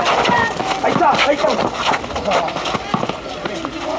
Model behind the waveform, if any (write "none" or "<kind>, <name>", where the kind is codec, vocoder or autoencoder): none